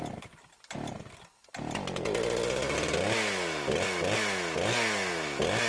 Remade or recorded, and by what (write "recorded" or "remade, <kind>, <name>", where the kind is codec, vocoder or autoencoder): recorded